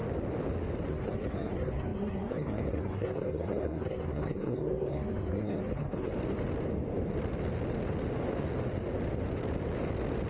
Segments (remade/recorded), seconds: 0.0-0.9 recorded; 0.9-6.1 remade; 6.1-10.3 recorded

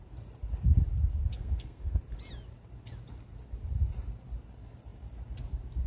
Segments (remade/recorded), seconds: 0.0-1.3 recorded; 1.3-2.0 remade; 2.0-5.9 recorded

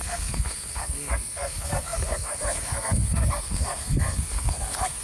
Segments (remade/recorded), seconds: 0.0-5.0 remade